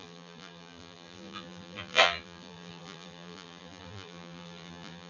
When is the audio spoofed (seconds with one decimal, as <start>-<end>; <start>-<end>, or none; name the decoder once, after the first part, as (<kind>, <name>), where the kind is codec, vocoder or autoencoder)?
0.0-5.1 (vocoder, BigVGAN v2)